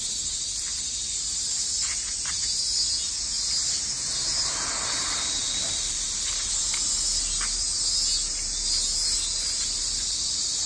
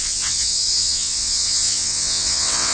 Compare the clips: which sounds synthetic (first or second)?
second